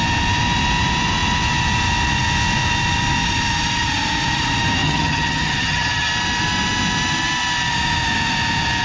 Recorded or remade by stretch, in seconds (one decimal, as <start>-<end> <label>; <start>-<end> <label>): 0.0-4.8 recorded; 4.8-6.1 remade; 6.1-8.8 recorded